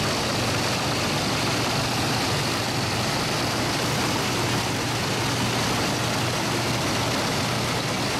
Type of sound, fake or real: real